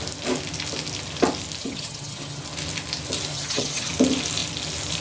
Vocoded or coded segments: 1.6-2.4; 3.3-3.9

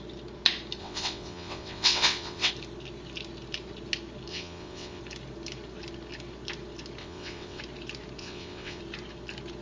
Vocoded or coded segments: 0.8-2.5; 4.3-5.0; 7.0-7.6; 8.2-8.8

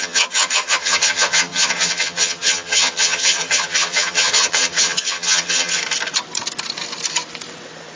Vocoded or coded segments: 0.0-5.8

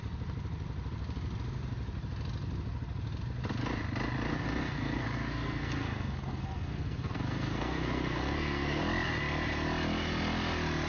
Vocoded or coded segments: 4.3-8.8

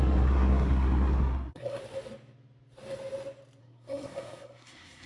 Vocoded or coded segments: 0.0-1.8; 3.6-5.1

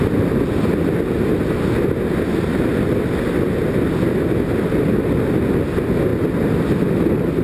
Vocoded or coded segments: none

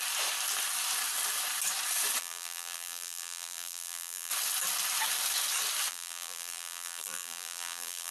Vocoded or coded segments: 2.2-4.3; 5.9-8.1